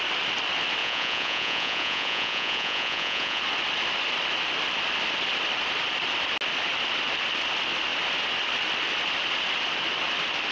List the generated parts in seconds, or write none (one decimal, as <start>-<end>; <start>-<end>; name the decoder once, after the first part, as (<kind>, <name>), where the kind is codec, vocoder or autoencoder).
0.8-3.4 (vocoder, Vocos)